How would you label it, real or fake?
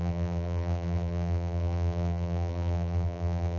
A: fake